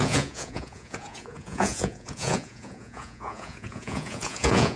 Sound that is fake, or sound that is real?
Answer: fake